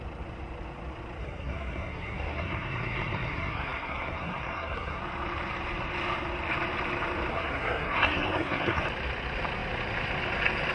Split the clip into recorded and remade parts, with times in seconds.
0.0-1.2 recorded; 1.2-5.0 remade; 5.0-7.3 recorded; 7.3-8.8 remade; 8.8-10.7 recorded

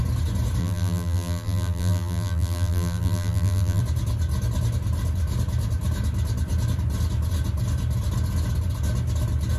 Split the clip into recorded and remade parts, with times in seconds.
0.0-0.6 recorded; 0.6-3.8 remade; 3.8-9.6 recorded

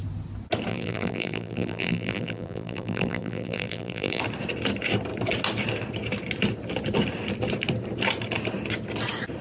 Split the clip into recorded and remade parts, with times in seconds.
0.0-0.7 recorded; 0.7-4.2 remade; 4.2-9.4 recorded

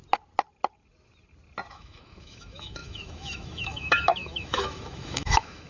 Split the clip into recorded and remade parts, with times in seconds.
0.0-1.7 recorded; 1.7-5.7 remade

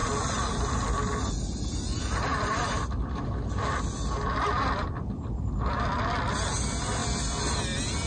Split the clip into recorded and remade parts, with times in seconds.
0.0-8.1 recorded